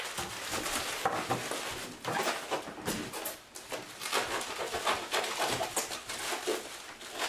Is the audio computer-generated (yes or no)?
no